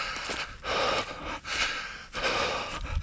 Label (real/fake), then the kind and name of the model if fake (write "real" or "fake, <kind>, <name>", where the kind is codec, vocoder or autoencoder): real